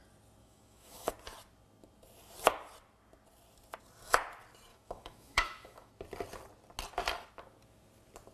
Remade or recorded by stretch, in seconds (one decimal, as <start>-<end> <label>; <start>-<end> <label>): 0.0-0.4 recorded; 0.4-1.1 remade; 1.1-4.7 recorded; 4.7-5.9 remade; 5.9-8.3 recorded